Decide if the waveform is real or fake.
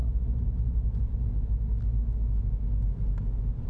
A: real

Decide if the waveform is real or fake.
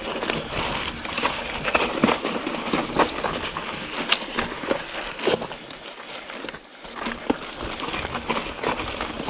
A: real